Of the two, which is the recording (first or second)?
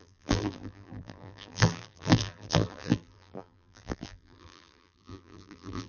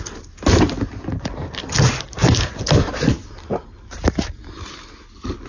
second